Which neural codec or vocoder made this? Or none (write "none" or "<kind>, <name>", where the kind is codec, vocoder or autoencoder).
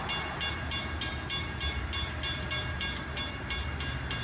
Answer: none